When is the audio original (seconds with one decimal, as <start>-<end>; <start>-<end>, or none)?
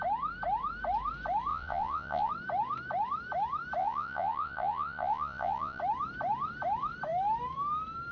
0.0-1.5; 2.3-3.8; 5.8-8.1